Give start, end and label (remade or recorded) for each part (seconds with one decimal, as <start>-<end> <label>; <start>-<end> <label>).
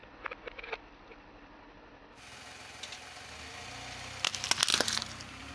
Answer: 0.0-3.3 remade; 3.3-4.7 recorded; 4.7-5.5 remade